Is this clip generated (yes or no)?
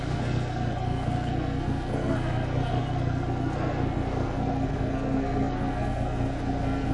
yes